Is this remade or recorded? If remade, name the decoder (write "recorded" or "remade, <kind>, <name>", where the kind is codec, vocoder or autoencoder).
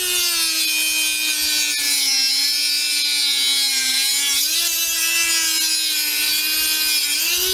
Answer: recorded